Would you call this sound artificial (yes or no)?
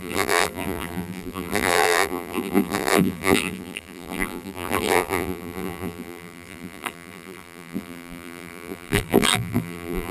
yes